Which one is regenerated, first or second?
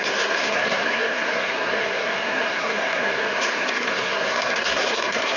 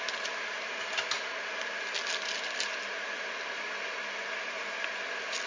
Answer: first